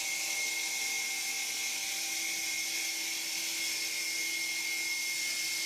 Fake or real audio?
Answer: real